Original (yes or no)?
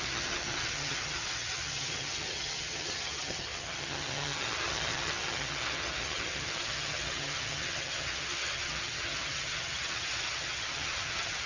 no